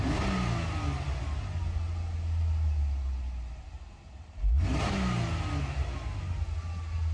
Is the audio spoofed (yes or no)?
no